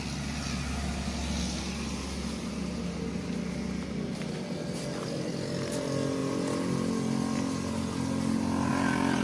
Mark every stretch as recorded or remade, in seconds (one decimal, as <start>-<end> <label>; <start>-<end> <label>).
0.0-9.2 recorded